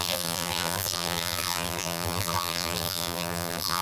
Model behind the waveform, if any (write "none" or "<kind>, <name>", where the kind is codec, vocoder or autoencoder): vocoder, BigVGAN v2